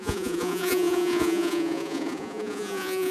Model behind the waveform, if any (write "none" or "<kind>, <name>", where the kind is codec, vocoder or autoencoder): vocoder, Vocos